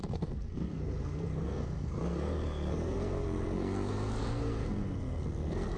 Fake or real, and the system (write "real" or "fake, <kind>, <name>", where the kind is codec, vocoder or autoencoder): fake, codec, SNAC